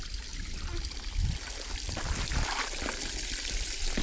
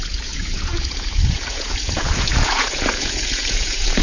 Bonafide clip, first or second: first